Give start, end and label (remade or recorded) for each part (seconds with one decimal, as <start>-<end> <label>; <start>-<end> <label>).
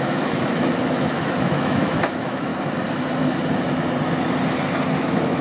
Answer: 0.0-2.5 remade; 2.5-5.0 recorded; 5.0-5.4 remade